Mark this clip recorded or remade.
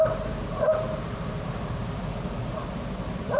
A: remade